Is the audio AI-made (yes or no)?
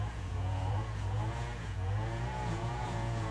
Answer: yes